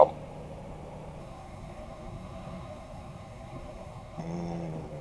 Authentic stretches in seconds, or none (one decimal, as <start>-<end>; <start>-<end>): 0.0-1.2; 4.2-5.0